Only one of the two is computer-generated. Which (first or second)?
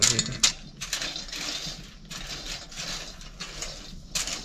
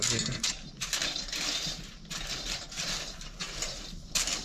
second